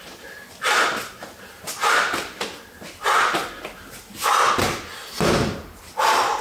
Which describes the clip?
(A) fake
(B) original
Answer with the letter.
B